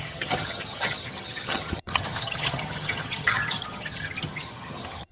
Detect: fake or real fake